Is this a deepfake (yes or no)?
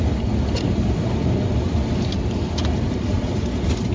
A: no